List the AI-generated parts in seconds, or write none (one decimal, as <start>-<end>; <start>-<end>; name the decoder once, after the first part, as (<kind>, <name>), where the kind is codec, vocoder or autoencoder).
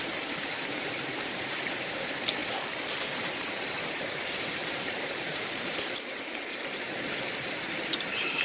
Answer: 0.0-2.4 (vocoder, BigVGAN v2); 3.2-8.4